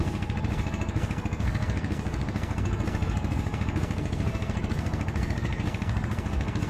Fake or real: fake